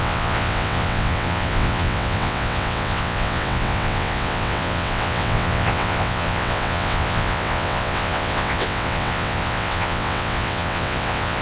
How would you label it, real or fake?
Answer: fake